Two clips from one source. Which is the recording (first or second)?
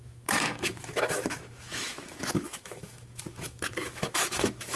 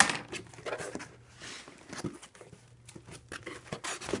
second